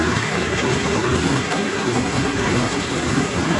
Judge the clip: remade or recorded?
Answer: remade